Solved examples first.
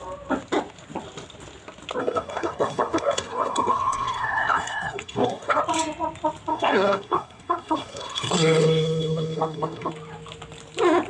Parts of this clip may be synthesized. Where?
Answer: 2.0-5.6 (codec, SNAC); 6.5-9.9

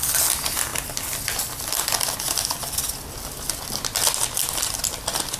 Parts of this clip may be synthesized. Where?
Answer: none

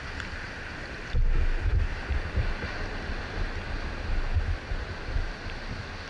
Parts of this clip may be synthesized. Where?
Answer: none

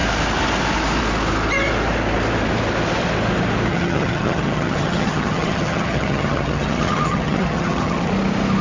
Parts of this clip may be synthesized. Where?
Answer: 3.7-8.1 (vocoder, HiFi-GAN)

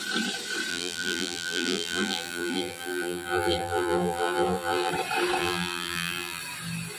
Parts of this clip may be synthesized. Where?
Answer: 0.7-4.9 (vocoder, BigVGAN v2); 5.4-6.4

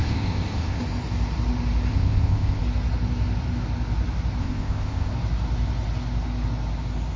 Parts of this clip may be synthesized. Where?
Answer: 0.0-0.8 (codec, ZipCodec); 1.9-2.6; 4.4-5.1